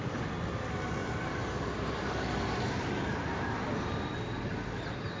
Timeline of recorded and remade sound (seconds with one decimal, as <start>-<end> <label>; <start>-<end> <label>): 0.0-1.0 recorded; 1.0-4.1 remade; 4.1-5.2 recorded